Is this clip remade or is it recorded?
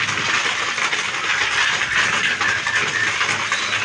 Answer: recorded